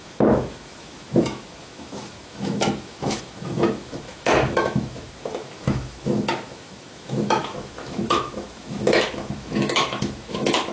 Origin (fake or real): fake